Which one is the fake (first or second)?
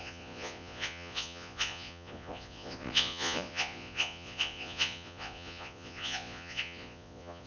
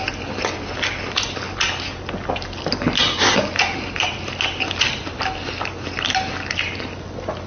first